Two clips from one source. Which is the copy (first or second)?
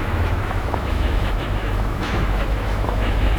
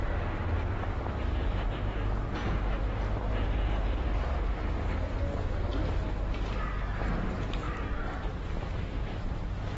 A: first